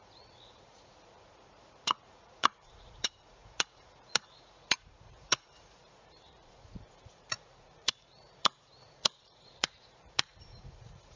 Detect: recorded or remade remade